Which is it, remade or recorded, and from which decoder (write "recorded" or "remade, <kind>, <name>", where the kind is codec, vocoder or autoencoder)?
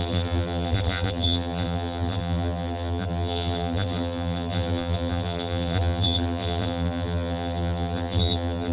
remade, vocoder, BigVGAN v2